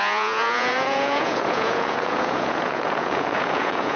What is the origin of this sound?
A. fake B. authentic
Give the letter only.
A